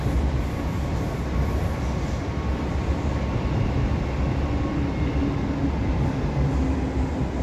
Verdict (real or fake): real